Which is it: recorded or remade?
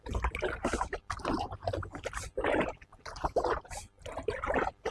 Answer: recorded